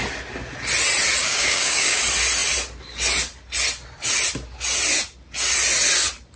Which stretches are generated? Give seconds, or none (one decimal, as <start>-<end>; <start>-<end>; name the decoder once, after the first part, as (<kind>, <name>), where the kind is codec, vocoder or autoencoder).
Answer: 1.2-2.0 (codec, DAC)

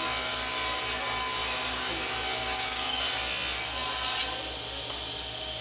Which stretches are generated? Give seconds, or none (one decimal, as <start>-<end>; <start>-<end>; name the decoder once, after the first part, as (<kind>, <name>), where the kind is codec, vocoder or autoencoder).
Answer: 2.4-3.0 (codec, DAC)

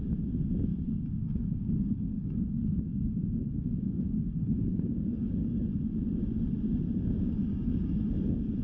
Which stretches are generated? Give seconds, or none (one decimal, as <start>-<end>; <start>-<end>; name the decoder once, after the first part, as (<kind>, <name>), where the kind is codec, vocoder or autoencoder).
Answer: 0.7-5.6 (codec, DAC); 7.4-8.0

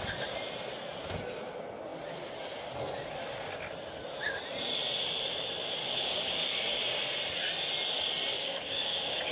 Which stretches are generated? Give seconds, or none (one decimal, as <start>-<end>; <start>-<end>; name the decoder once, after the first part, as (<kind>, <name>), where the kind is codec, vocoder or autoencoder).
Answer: 5.8-6.8 (codec, DAC); 8.3-9.3

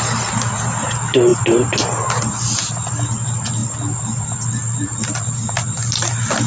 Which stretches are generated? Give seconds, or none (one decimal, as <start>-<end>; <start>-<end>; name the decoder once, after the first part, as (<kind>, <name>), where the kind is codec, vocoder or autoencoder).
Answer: none

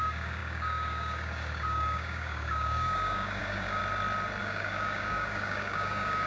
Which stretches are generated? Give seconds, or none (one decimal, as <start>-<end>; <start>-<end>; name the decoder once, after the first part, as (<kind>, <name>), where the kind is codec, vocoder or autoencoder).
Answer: 0.0-3.8 (codec, DAC); 4.4-6.3